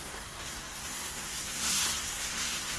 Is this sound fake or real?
fake